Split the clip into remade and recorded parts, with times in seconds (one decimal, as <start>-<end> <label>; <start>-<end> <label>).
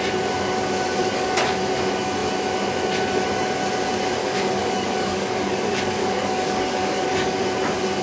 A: 0.0-1.0 recorded; 1.0-1.6 remade; 1.6-4.2 recorded; 4.2-7.4 remade; 7.4-8.0 recorded